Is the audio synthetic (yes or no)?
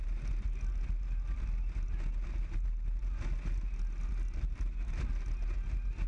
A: no